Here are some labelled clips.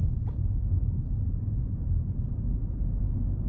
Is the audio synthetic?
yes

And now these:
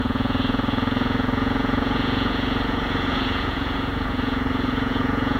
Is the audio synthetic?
yes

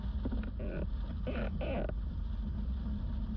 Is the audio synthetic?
no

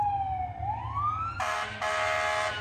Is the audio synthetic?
no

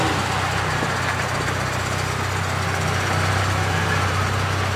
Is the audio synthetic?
no